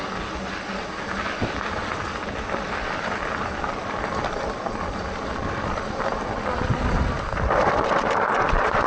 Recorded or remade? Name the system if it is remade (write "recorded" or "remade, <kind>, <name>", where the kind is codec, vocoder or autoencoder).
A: recorded